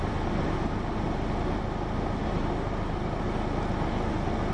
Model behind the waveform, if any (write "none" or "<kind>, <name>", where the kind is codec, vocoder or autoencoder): none